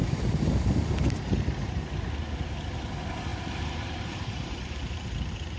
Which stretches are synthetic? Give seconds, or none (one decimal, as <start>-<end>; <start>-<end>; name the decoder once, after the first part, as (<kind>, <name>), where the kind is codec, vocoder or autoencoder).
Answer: 0.0-0.9 (vocoder, BigVGAN v2); 3.3-5.6

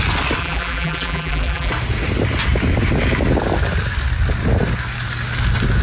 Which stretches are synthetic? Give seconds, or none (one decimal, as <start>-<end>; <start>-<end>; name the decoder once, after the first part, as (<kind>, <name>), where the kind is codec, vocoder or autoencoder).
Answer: 0.4-1.7 (vocoder, BigVGAN v2)